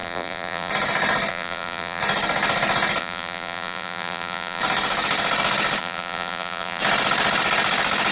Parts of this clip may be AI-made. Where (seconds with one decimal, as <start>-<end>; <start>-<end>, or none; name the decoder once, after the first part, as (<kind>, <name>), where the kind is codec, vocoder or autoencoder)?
0.0-0.7 (vocoder, BigVGAN v2); 1.3-2.0; 3.0-4.6; 5.8-6.8